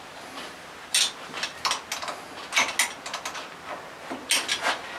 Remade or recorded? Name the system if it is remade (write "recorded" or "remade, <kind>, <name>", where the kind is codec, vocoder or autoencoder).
recorded